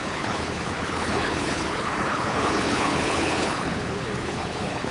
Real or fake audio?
fake